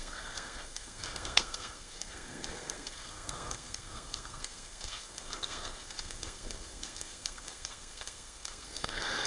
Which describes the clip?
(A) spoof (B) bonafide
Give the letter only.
A